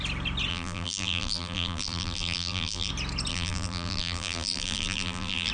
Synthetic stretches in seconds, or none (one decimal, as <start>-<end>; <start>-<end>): 0.5-2.9; 3.3-5.5